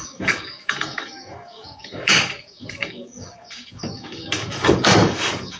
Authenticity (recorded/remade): remade